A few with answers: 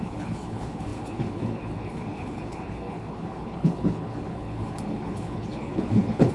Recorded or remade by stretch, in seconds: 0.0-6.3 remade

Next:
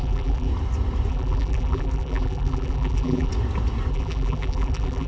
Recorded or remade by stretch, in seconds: 0.0-0.5 remade; 0.5-1.1 recorded; 1.1-3.3 remade; 3.3-3.9 recorded; 3.9-5.1 remade

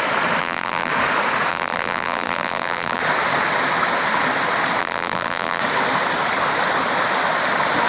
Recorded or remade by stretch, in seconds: 0.0-0.4 recorded; 0.4-0.9 remade; 0.9-1.5 recorded; 1.5-3.0 remade; 3.0-4.8 recorded; 4.8-5.6 remade; 5.6-7.9 recorded

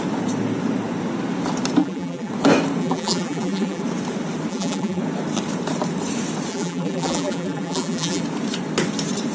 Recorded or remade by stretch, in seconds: 0.0-1.8 recorded; 1.8-2.3 remade; 2.3-2.8 recorded; 2.8-3.8 remade; 3.8-4.5 recorded; 4.5-5.0 remade; 5.0-6.5 recorded; 6.5-8.2 remade; 8.2-9.3 recorded

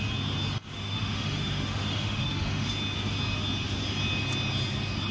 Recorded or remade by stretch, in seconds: 0.0-0.6 recorded; 0.6-2.7 remade; 2.7-5.1 recorded

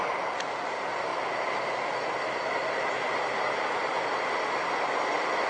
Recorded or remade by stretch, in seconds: 0.0-5.5 recorded

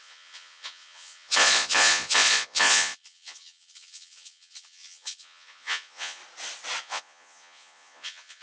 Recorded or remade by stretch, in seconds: 0.0-6.2 remade; 6.2-6.8 recorded; 6.8-8.4 remade